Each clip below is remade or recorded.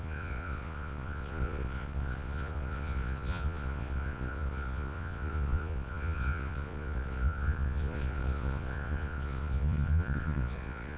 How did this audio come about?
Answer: remade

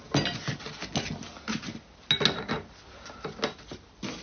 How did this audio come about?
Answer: recorded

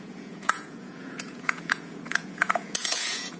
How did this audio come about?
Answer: remade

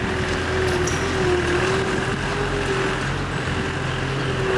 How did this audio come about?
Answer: recorded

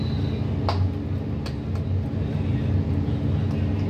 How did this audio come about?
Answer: recorded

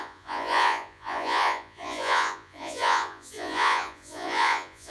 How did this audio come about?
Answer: remade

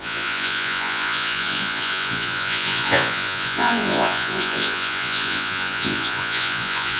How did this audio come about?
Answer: remade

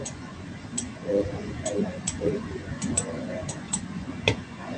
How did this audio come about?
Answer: remade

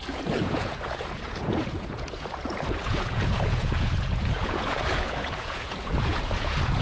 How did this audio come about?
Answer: remade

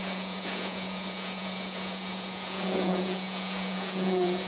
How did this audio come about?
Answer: remade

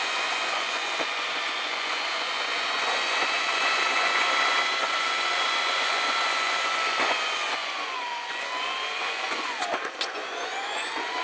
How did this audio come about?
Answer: remade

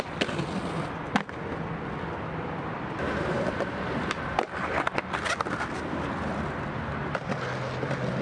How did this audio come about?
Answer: recorded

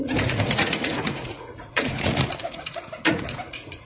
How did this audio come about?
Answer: remade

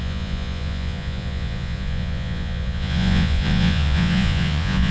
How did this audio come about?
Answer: remade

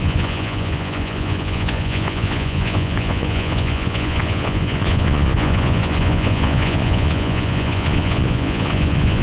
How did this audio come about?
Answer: remade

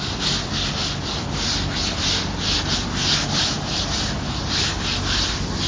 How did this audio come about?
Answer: recorded